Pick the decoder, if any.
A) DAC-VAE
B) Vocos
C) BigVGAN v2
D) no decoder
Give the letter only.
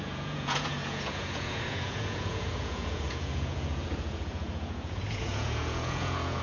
B